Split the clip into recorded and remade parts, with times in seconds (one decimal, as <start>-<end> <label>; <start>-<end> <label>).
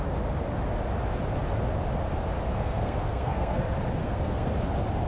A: 0.0-2.5 recorded; 2.5-3.6 remade; 3.6-4.0 recorded; 4.0-4.5 remade; 4.5-5.1 recorded